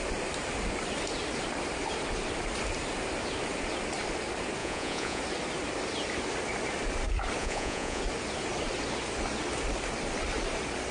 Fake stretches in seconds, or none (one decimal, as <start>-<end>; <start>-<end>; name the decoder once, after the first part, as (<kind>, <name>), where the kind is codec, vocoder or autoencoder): 4.6-5.2 (vocoder, Vocos); 7.4-8.0